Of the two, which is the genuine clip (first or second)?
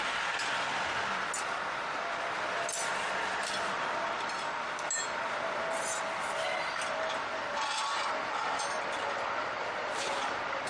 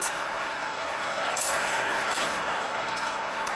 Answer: first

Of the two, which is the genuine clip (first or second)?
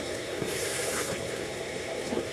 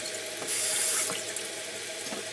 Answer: second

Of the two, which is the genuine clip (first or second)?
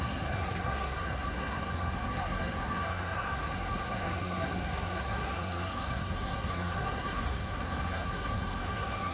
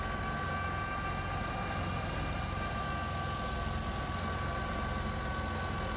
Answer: second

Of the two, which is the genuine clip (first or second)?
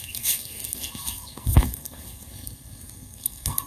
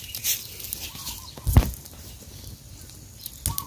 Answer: second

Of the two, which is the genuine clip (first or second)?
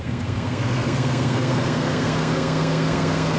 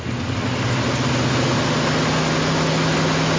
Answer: second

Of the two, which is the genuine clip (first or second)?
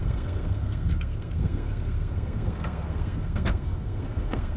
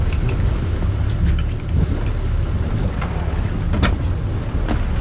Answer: second